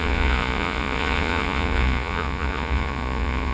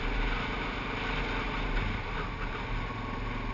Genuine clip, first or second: second